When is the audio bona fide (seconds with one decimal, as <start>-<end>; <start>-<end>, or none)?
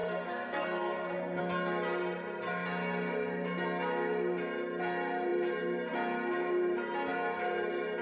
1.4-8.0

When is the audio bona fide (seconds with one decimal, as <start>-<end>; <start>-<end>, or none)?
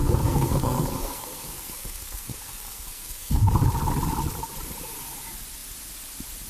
3.5-6.5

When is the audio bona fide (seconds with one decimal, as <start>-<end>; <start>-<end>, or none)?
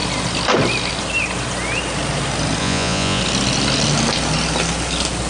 0.0-2.6; 3.2-5.3